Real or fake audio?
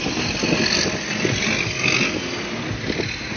real